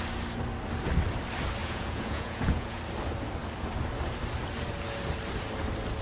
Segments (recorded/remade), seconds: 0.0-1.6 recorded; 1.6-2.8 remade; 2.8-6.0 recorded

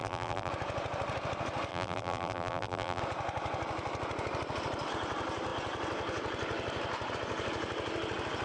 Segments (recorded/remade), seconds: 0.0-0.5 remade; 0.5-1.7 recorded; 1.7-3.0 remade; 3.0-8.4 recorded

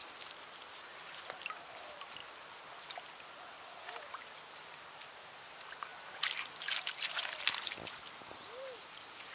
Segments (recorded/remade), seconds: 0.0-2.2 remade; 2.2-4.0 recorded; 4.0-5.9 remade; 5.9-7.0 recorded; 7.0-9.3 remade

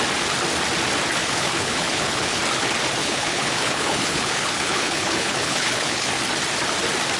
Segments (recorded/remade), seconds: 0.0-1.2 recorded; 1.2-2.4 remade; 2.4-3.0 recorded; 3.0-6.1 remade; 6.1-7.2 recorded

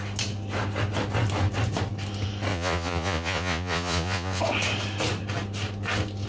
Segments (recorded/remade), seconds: 0.0-2.5 recorded; 2.5-4.4 remade; 4.4-6.3 recorded

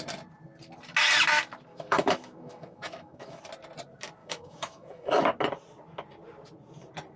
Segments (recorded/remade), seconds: 0.0-1.7 recorded; 1.7-3.4 remade; 3.4-4.2 recorded; 4.2-5.2 remade; 5.2-7.2 recorded

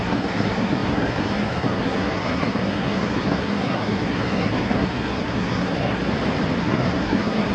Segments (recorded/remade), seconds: 0.0-6.0 remade; 6.0-6.6 recorded; 6.6-7.5 remade

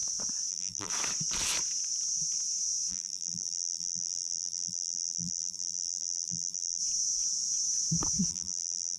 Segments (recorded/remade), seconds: 0.0-0.5 recorded; 0.5-0.9 remade; 0.9-2.9 recorded; 2.9-6.8 remade; 6.8-8.3 recorded; 8.3-9.0 remade